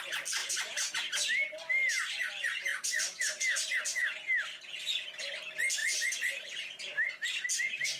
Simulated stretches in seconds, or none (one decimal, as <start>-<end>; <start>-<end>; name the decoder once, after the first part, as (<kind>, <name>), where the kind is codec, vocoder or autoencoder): 0.4-0.9 (vocoder, BigVGAN v2); 2.7-3.8; 5.8-7.5